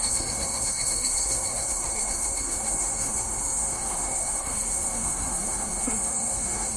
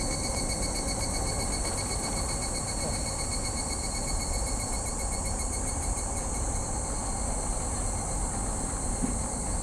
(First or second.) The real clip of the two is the second